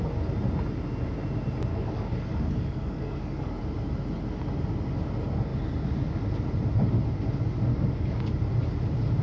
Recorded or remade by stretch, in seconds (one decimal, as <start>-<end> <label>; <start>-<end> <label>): 0.0-1.7 recorded; 1.7-3.6 remade; 3.6-7.7 recorded; 7.7-8.3 remade; 8.3-9.2 recorded